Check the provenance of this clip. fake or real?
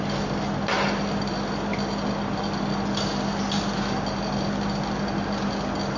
real